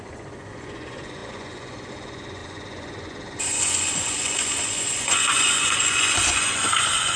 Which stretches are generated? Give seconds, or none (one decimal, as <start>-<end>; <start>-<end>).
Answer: 0.0-7.2